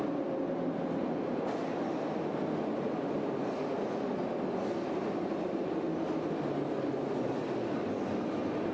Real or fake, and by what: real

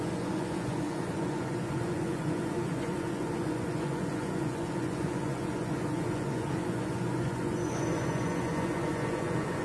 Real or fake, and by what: fake, vocoder, Vocos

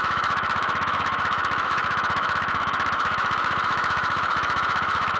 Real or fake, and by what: fake, autoencoder, DAC-VAE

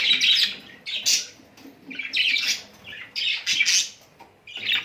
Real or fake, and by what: real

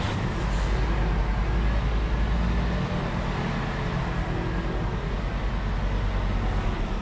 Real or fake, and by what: real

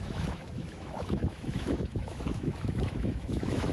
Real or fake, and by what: fake, autoencoder, DAC-VAE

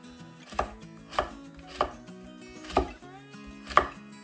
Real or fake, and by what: real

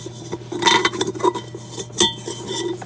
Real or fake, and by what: real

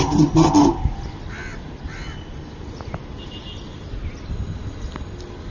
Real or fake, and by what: real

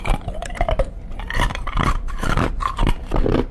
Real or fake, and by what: fake, vocoder, BigVGAN v2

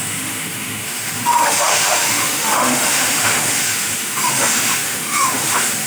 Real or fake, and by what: fake, autoencoder, DAC-VAE